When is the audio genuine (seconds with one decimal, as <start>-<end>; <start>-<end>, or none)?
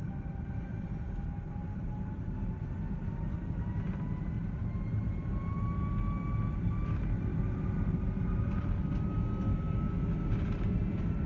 0.0-11.3